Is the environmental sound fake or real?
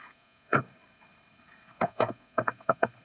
fake